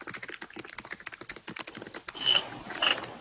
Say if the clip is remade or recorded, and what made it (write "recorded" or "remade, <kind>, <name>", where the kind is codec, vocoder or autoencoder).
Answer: recorded